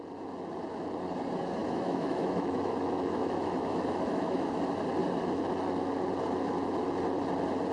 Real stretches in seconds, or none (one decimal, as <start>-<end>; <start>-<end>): 0.0-1.6; 4.6-7.7